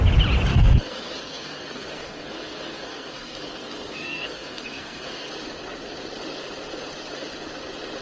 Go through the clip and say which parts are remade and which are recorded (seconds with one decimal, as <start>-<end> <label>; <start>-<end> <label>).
0.0-0.5 recorded; 0.5-5.3 remade; 5.3-8.0 recorded